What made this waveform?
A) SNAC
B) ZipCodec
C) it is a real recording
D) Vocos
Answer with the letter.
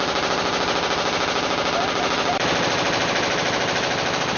C